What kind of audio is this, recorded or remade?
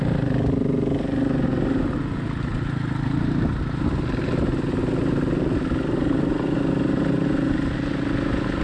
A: recorded